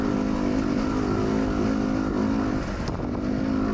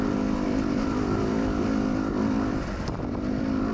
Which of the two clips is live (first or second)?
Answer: first